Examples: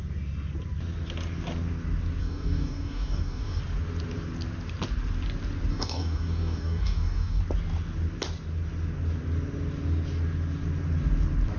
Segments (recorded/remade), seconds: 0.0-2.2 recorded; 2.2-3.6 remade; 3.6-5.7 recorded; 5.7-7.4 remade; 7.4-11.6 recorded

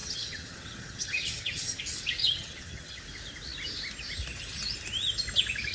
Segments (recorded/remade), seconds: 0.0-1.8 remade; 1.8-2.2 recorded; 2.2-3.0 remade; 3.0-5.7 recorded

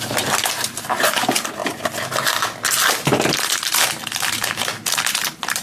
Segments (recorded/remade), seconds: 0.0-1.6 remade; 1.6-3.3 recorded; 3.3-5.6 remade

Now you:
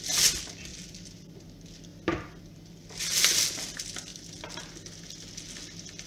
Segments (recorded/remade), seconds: 0.0-0.7 recorded; 0.7-1.2 remade; 1.2-1.9 recorded; 1.9-2.4 remade; 2.4-6.1 recorded

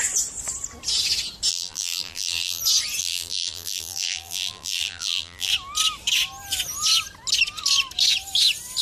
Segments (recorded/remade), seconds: 0.0-1.5 recorded; 1.5-2.6 remade; 2.6-3.0 recorded; 3.0-5.5 remade; 5.5-8.8 recorded